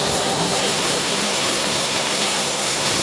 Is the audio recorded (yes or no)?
no